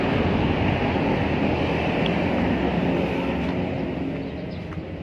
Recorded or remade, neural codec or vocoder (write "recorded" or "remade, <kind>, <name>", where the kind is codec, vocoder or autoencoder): recorded